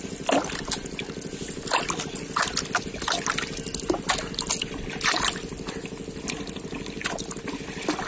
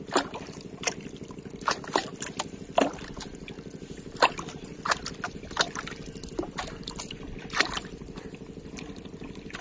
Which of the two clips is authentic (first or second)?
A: first